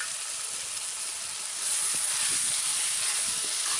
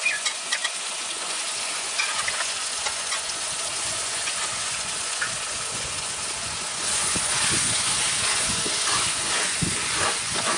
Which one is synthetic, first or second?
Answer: second